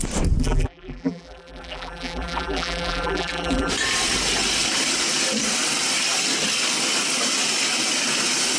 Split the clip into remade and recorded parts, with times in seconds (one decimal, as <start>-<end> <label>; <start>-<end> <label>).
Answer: 0.0-0.4 recorded; 0.4-3.7 remade; 3.7-8.6 recorded